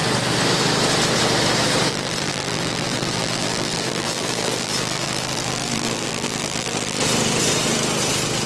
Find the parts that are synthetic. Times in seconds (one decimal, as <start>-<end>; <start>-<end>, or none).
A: 1.9-7.0